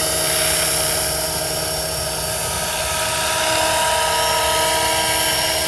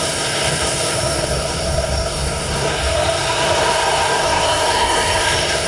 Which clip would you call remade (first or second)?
second